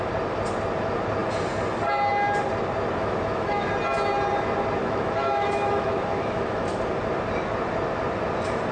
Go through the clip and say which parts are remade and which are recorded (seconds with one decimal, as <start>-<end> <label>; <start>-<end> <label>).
0.0-3.0 recorded; 3.0-3.7 remade; 3.7-4.8 recorded; 4.8-6.8 remade; 6.8-8.7 recorded